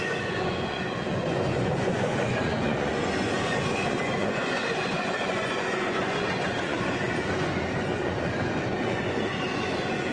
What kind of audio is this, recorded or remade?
remade